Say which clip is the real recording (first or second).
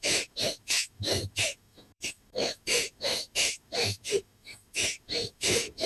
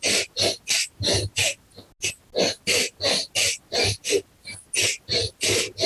second